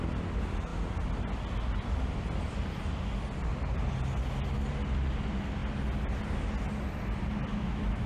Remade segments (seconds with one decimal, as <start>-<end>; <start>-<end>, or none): 7.5-8.1